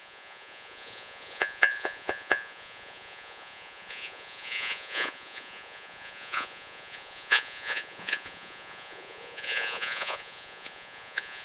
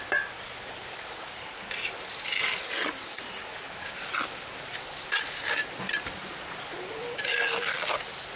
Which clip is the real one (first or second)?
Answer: second